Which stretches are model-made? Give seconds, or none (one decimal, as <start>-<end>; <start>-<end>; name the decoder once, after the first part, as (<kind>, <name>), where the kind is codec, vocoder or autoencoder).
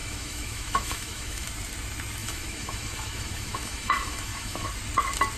0.0-1.5 (autoencoder, DAC-VAE); 2.2-4.7